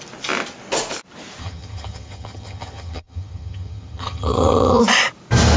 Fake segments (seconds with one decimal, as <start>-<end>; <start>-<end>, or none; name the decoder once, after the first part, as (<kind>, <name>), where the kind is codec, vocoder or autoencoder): 1.4-4.8 (vocoder, HiFi-GAN)